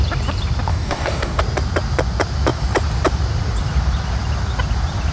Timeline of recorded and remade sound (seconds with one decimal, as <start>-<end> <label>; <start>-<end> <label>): 0.0-0.7 recorded; 0.7-1.4 remade; 1.4-5.1 recorded